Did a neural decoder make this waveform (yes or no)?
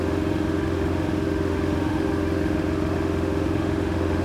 yes